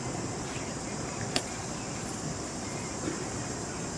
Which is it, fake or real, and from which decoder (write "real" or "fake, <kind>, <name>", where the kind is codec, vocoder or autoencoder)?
fake, vocoder, BigVGAN v2